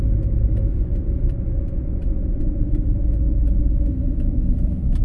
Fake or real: real